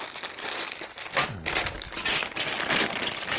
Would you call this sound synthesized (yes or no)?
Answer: no